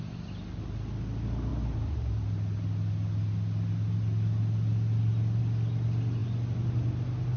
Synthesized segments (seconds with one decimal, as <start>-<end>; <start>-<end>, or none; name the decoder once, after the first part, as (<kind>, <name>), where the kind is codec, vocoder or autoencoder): none